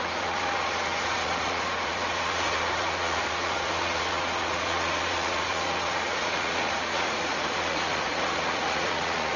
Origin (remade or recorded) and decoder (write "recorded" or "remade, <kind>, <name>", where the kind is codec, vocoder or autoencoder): remade, vocoder, Vocos